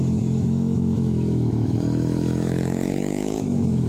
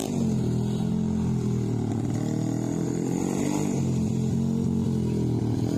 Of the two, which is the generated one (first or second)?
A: first